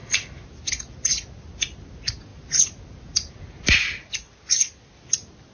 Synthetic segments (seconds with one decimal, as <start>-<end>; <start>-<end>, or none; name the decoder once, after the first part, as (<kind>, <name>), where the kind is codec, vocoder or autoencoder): none